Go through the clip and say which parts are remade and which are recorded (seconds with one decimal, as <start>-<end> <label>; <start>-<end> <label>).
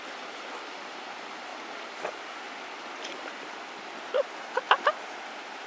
0.0-5.7 remade